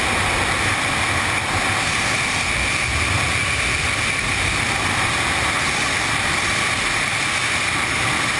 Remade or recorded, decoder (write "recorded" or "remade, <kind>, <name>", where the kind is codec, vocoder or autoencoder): recorded